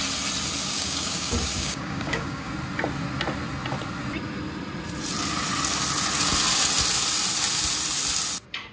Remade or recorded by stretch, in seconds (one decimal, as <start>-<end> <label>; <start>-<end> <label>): 0.0-0.6 recorded; 0.6-2.5 remade; 2.5-8.7 recorded